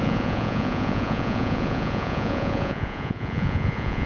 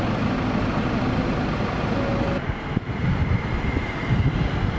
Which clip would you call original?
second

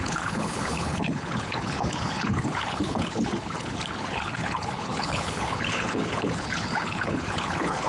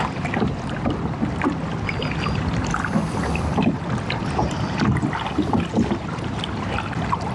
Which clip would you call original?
second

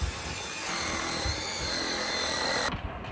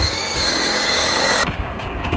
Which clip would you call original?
first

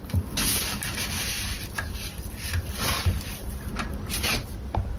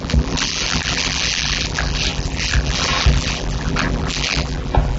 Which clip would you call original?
first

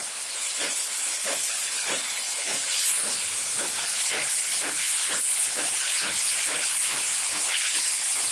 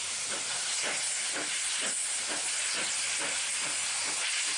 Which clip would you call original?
second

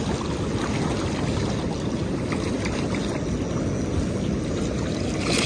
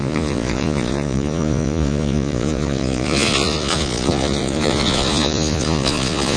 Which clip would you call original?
first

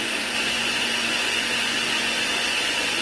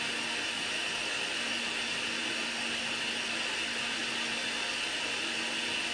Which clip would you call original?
second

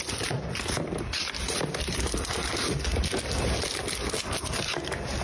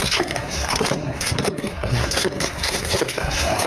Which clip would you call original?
first